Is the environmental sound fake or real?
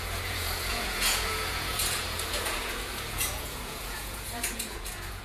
fake